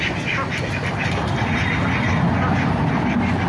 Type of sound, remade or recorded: recorded